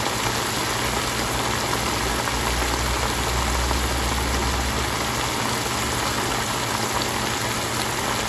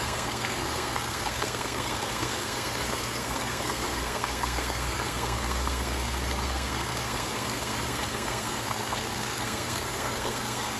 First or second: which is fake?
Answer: second